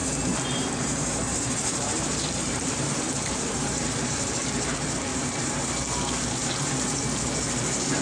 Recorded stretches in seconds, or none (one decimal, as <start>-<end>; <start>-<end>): 4.5-5.1; 5.7-6.4; 7.0-8.0